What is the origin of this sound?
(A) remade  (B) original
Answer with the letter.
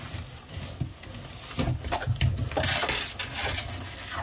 B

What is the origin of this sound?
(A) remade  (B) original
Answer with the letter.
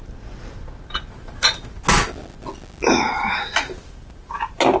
B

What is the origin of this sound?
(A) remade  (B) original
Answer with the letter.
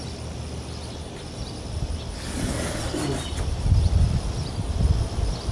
B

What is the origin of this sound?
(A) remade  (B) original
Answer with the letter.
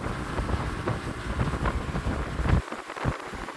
A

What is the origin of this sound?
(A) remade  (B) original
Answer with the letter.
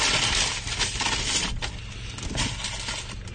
B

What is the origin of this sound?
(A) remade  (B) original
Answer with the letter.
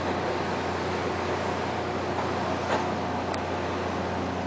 B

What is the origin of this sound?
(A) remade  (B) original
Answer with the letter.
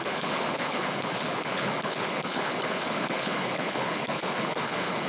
A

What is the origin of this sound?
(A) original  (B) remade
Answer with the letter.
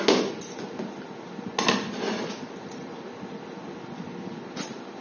A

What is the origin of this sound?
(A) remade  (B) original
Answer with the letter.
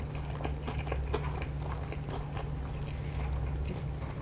B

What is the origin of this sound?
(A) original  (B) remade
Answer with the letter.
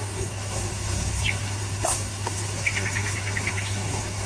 B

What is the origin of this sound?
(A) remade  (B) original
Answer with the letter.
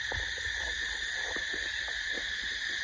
B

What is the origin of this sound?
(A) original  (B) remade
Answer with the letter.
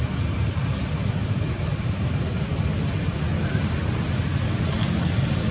A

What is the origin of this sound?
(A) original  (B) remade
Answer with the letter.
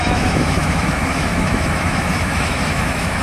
B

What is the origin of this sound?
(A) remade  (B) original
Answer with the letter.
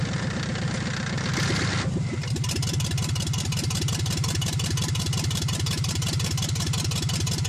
B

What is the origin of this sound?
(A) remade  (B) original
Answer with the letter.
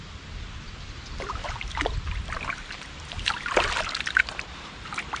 B